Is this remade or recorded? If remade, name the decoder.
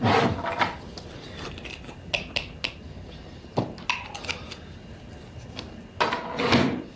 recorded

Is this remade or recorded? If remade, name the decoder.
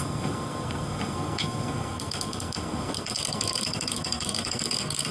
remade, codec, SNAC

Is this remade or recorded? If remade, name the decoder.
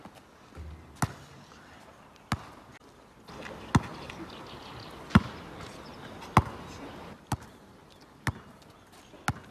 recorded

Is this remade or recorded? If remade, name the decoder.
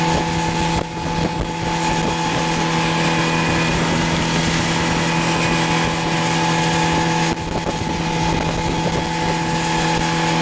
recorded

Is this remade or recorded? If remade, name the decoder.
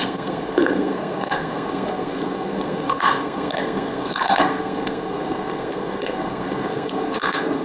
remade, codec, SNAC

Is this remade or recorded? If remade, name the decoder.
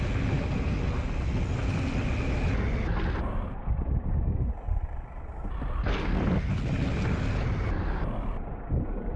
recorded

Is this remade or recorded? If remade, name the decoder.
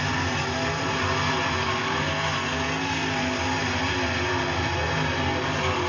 recorded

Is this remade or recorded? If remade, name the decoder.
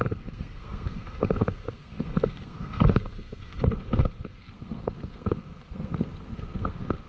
remade, codec, SNAC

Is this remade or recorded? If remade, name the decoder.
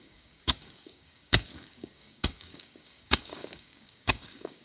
remade, codec, DAC